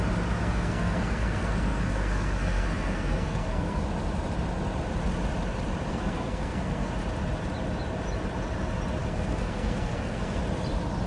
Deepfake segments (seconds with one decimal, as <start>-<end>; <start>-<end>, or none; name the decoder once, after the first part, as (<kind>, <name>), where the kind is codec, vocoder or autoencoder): 0.4-3.8 (codec, SNAC); 5.9-6.9; 9.0-10.4